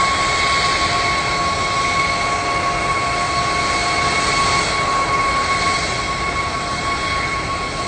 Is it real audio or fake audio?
real